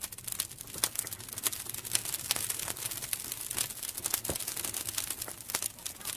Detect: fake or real real